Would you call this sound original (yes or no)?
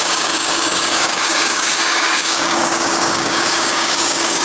no